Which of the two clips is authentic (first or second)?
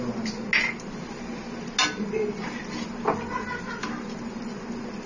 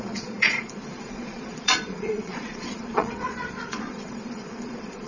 first